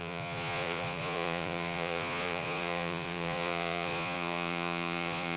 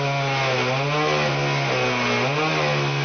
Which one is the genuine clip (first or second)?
second